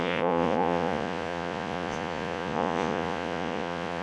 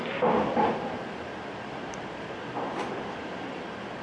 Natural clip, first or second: second